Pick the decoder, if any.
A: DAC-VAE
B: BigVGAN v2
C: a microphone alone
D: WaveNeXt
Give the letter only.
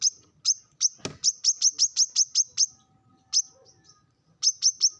C